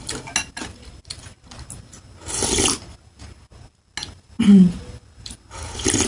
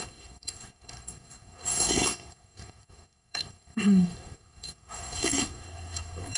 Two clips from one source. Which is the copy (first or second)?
second